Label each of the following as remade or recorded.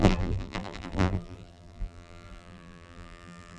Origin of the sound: remade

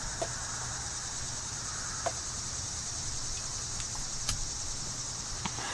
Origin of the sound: remade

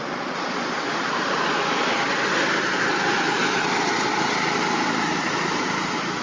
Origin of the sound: remade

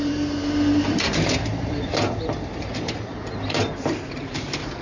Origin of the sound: remade